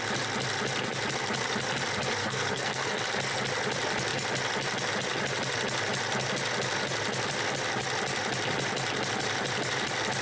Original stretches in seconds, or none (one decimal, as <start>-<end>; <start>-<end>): 0.0-2.2; 3.0-10.2